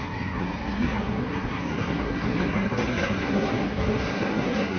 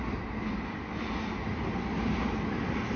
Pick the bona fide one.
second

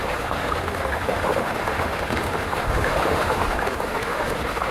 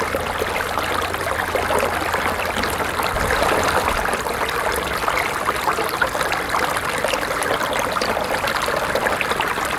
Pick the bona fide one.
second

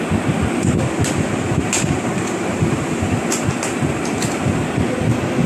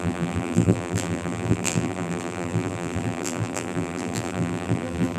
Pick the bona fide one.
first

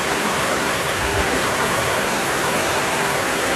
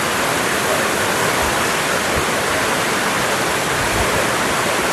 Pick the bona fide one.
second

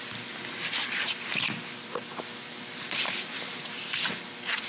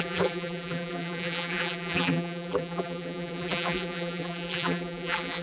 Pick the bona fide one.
first